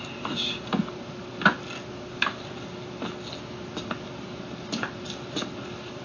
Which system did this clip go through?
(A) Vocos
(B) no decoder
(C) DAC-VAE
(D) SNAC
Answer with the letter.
B